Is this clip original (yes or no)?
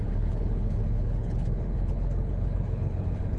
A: no